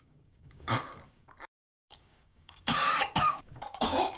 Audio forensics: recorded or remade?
remade